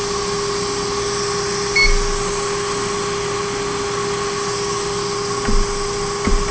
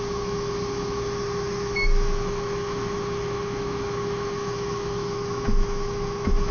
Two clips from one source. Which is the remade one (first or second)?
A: second